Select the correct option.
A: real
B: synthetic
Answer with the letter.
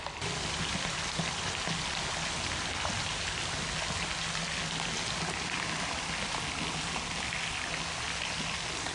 A